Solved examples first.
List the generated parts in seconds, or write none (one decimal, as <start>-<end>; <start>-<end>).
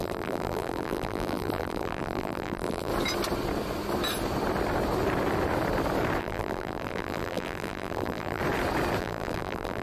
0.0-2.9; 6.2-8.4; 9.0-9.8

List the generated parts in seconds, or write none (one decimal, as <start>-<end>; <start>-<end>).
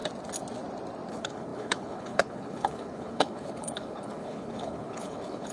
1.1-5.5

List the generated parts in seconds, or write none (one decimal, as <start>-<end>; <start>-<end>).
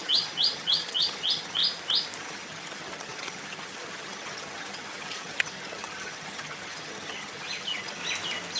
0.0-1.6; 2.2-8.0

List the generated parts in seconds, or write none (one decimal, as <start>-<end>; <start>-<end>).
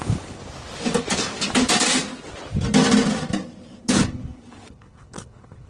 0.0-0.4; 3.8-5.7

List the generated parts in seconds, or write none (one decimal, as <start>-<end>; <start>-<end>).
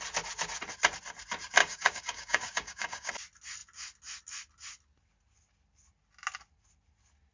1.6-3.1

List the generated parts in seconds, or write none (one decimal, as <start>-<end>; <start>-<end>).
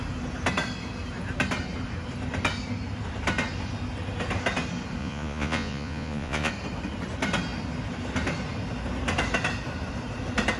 5.0-6.5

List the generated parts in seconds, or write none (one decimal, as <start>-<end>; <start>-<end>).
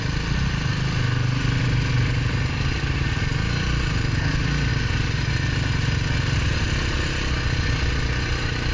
none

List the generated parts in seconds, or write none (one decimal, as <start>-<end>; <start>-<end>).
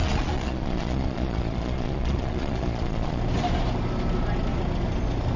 0.0-3.2